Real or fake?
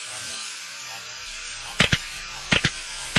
fake